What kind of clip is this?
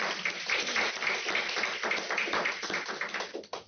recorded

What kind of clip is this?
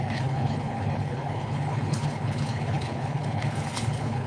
remade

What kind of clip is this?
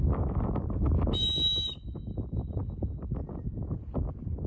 recorded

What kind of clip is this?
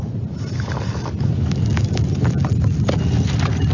recorded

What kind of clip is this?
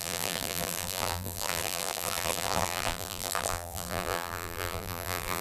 remade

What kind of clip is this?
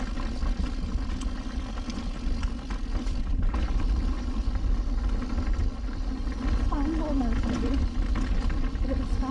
recorded